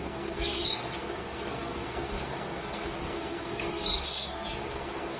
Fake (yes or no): yes